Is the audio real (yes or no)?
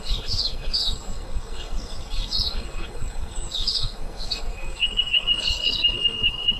no